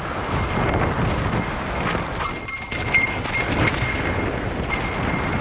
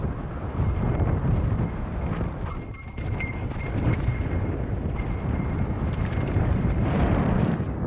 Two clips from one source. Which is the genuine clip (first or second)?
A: first